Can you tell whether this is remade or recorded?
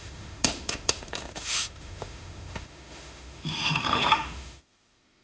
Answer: remade